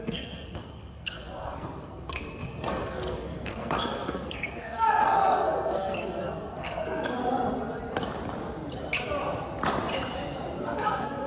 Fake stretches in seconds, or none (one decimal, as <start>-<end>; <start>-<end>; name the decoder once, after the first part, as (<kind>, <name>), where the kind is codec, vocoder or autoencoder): 0.0-7.2 (codec, SNAC); 10.6-11.3